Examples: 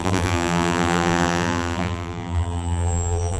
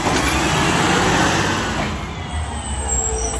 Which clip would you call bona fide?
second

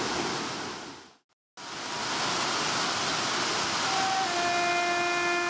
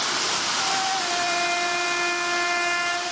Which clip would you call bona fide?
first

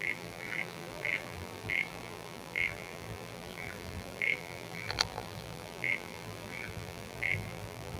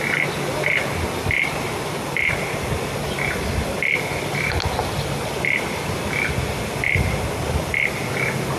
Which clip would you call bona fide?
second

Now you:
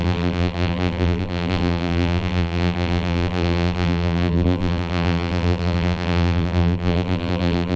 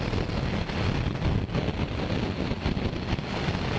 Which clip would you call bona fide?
second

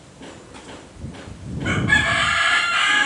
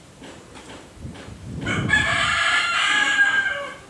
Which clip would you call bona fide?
first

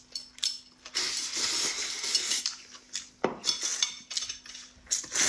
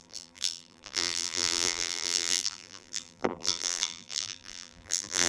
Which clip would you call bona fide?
first